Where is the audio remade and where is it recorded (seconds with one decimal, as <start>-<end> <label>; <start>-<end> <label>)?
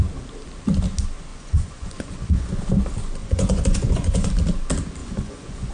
0.0-1.3 recorded; 1.3-2.6 remade; 2.6-3.2 recorded; 3.2-4.3 remade; 4.3-5.0 recorded; 5.0-5.7 remade